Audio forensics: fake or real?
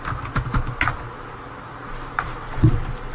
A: real